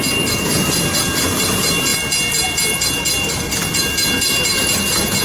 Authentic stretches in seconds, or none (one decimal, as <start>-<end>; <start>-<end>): 1.9-5.2